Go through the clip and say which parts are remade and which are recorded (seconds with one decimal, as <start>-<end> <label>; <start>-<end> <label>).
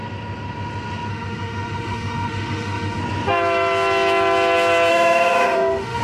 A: 0.0-1.1 recorded; 1.1-3.0 remade; 3.0-4.9 recorded; 4.9-6.0 remade